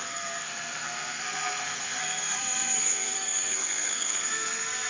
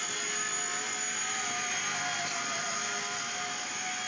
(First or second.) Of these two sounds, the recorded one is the second